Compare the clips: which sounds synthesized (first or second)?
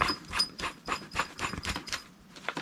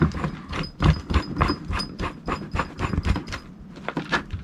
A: first